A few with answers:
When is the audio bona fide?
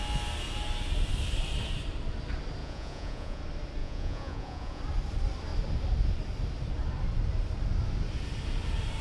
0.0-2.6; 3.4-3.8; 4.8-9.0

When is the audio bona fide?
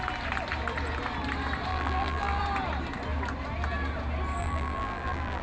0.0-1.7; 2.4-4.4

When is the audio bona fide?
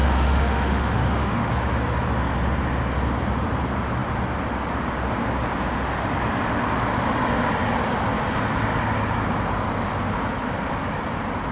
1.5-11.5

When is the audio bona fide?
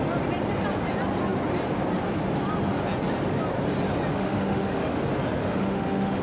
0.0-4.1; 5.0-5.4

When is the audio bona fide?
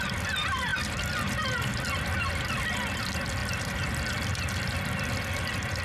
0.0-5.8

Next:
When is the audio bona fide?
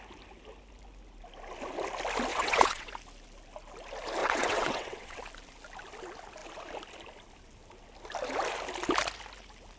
0.0-2.3; 2.9-4.2; 5.2-9.8